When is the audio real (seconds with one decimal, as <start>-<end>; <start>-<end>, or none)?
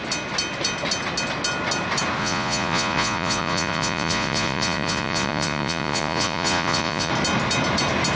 0.0-2.2; 7.1-8.2